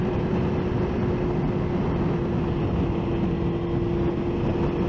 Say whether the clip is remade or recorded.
recorded